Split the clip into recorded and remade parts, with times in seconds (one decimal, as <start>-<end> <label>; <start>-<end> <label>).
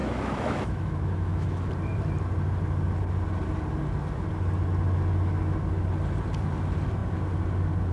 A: 0.0-1.7 remade; 1.7-7.9 recorded